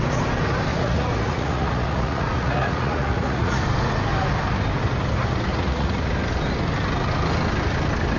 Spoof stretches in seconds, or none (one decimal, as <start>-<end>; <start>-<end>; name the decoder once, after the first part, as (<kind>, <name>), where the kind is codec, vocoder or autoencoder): 0.7-3.6 (vocoder, Vocos); 5.5-6.1